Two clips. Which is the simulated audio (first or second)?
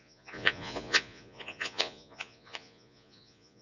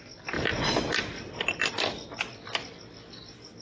first